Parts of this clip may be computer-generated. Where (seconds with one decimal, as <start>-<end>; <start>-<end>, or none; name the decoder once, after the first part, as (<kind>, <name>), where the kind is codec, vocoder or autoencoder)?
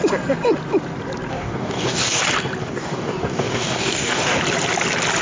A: 1.3-2.2 (codec, DAC); 2.6-4.4